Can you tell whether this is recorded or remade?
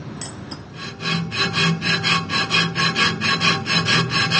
recorded